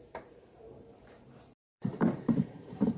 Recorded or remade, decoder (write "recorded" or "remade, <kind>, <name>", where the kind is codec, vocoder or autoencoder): remade, vocoder, BigVGAN v2